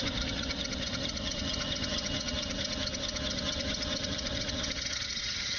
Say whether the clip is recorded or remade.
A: remade